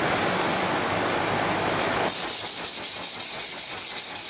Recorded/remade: recorded